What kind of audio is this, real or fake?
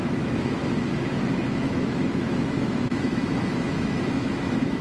fake